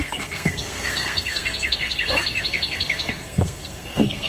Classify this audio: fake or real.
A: fake